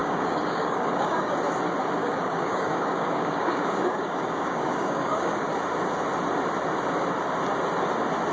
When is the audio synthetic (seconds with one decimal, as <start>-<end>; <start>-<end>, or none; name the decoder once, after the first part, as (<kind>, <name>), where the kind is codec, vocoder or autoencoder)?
0.0-1.3 (codec, DAC); 2.0-5.5